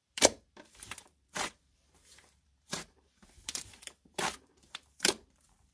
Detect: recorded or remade remade